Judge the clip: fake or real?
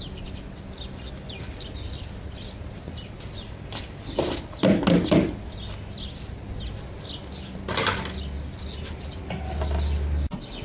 real